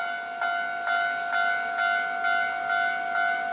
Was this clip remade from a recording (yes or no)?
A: no